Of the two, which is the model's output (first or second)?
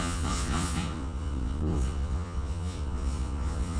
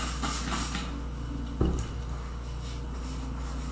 first